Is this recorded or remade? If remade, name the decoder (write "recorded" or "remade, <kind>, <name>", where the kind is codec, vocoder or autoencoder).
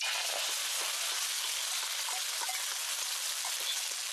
recorded